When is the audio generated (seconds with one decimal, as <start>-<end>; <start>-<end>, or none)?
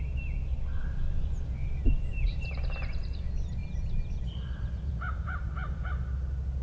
0.8-2.5; 3.6-5.8